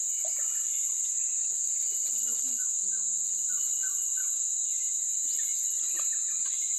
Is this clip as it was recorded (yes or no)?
yes